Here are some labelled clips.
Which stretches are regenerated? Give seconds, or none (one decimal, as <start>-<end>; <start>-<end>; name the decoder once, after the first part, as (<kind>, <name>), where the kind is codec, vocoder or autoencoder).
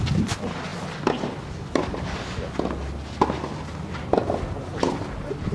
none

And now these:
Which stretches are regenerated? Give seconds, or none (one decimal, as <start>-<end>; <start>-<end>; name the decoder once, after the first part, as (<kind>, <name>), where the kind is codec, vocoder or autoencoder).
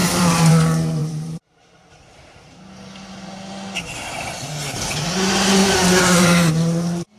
0.0-0.5 (vocoder, BigVGAN v2); 1.0-2.6; 5.6-6.5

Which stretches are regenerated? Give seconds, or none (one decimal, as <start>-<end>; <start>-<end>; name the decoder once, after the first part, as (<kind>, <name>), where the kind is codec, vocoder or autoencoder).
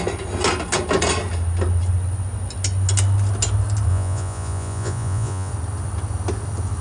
3.9-5.5 (vocoder, Vocos)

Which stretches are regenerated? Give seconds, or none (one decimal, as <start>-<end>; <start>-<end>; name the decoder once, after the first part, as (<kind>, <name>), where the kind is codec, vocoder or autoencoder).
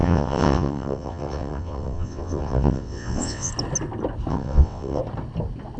0.0-3.5 (vocoder, WaveNeXt); 4.3-5.0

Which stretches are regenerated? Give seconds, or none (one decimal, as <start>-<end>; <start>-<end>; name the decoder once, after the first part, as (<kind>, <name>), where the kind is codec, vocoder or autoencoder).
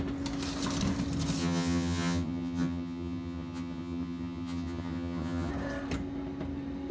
1.4-5.5 (vocoder, HiFi-GAN)